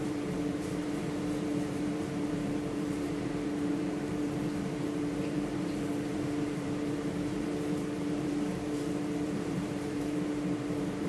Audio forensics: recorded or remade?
remade